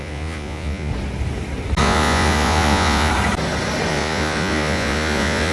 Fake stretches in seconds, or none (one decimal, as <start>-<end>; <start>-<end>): 0.0-0.9; 1.8-3.1; 3.9-5.5